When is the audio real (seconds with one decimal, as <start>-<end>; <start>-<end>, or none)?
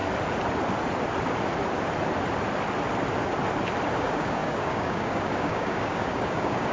0.0-4.0